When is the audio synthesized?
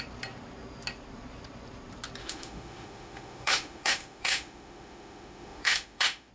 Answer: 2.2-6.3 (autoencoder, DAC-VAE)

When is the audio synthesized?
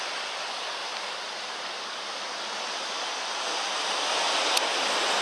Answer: none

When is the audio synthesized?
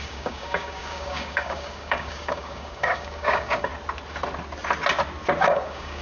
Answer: 0.0-3.7 (codec, DAC); 5.4-6.0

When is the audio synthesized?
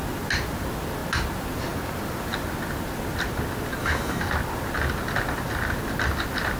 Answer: 3.8-4.3 (codec, DAC)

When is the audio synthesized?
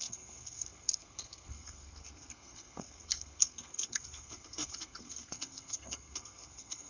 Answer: 0.0-6.9 (codec, SNAC)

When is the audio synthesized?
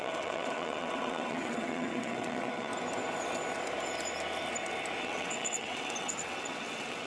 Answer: 0.0-2.7 (vocoder, WaveNeXt); 5.0-7.1